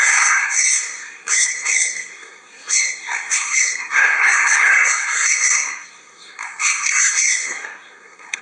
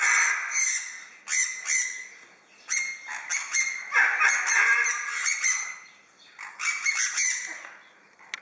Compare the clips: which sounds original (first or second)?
second